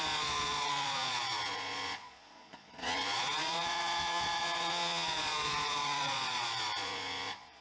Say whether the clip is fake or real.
fake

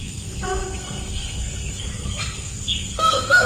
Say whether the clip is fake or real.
fake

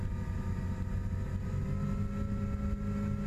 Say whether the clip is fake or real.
real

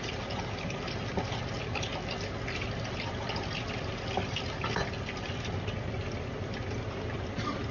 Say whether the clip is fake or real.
real